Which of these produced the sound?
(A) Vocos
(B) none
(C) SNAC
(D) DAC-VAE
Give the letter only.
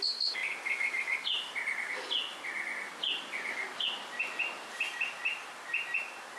B